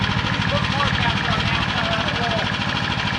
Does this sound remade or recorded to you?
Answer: recorded